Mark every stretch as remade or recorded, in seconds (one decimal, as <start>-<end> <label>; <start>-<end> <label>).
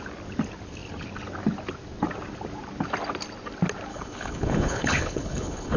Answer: 0.0-3.9 recorded; 3.9-5.8 remade